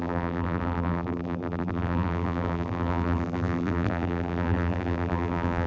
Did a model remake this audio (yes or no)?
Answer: yes